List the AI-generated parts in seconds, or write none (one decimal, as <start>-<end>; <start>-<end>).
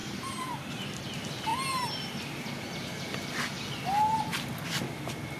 0.0-1.0